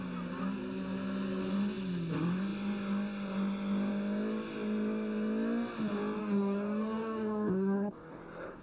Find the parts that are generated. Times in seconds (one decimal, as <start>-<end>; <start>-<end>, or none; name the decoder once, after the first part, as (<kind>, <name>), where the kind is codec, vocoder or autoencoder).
6.2-8.2 (codec, DAC)